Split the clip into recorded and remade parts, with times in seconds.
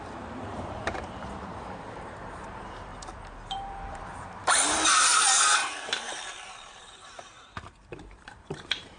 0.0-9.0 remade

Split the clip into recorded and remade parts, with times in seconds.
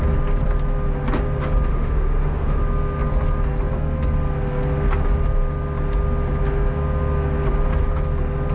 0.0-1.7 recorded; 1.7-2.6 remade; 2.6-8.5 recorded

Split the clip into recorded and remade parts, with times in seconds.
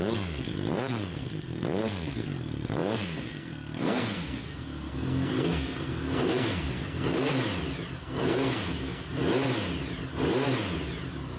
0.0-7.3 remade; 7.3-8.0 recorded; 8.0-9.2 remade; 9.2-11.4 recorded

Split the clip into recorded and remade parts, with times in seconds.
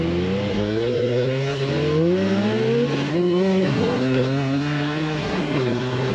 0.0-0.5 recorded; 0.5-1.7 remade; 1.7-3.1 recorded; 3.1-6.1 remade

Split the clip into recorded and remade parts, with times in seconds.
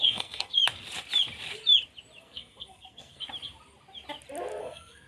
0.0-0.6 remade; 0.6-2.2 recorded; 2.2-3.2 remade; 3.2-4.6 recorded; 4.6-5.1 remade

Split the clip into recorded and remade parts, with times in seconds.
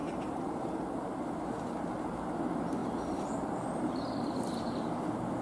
0.0-1.9 remade; 1.9-2.8 recorded; 2.8-5.0 remade; 5.0-5.4 recorded